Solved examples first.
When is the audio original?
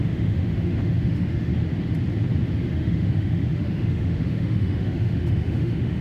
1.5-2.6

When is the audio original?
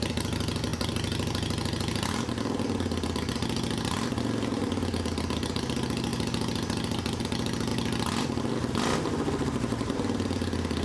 0.0-10.8